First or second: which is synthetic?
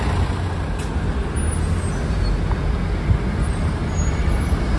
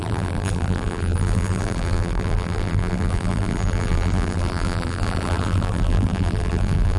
second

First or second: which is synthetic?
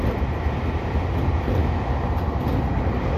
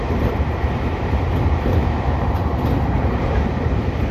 second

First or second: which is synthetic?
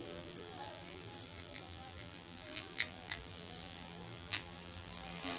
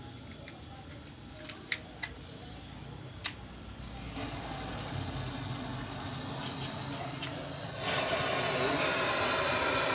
first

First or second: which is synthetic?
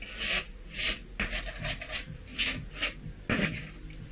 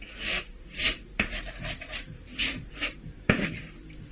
second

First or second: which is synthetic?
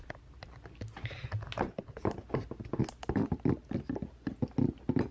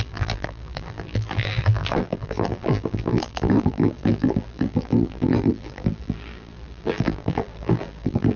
second